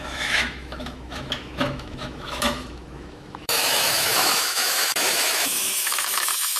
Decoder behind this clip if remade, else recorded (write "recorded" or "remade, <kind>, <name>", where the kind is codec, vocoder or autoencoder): remade, autoencoder, DAC-VAE